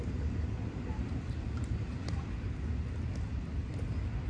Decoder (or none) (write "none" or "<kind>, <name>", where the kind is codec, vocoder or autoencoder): vocoder, BigVGAN v2